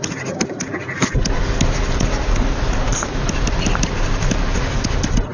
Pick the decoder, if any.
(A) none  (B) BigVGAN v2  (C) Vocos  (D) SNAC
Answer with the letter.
A